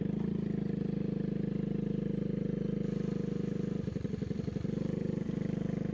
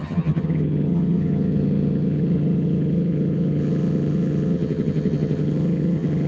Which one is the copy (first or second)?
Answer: second